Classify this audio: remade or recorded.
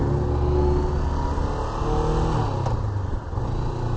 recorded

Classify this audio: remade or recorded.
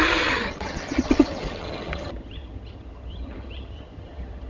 remade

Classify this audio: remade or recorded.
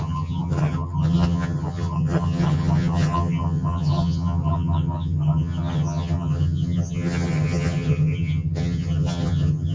remade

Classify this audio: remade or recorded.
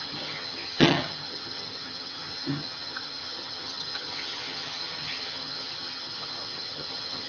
remade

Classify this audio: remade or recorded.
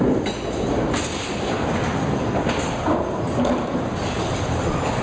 recorded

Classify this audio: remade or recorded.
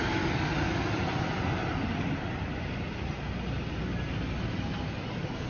recorded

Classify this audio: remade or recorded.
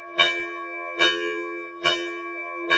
remade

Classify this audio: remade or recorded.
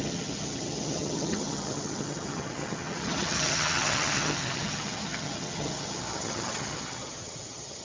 remade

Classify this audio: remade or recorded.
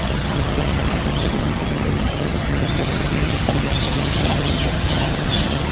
remade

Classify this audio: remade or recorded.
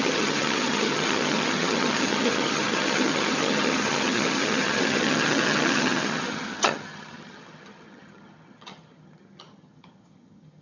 remade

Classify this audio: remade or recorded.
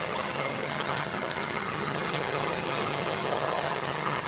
remade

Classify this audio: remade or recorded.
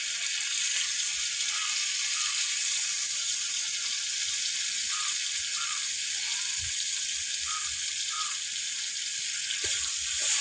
recorded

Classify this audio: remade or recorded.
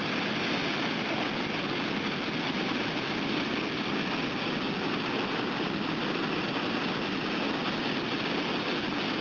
recorded